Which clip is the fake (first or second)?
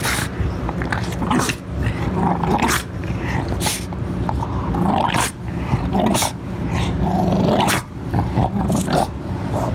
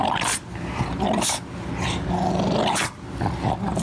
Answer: first